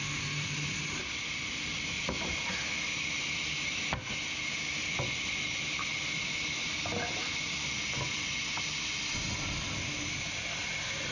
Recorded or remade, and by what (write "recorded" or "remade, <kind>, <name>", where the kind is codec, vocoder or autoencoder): recorded